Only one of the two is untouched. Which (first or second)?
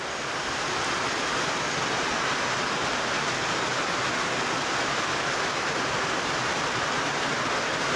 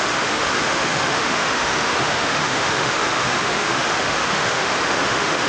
first